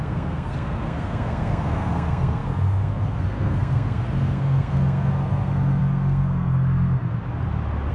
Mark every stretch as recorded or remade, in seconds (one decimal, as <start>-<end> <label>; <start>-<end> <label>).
0.0-7.1 remade; 7.1-7.9 recorded